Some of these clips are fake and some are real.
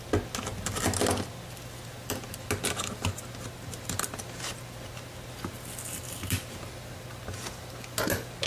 real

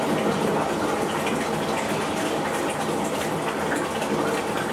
real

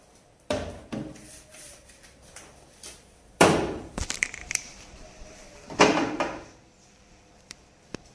fake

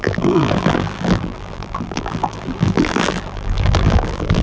fake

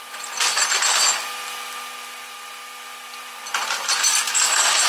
fake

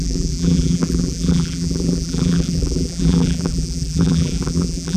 fake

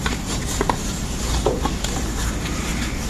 fake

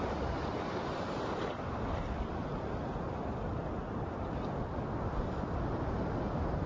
real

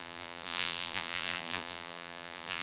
fake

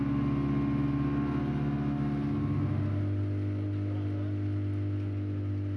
real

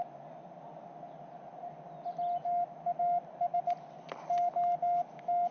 real